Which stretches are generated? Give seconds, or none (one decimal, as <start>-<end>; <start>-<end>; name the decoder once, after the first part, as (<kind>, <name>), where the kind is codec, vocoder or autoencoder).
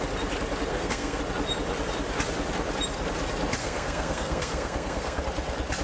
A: 0.7-1.2 (codec, SNAC); 3.6-5.2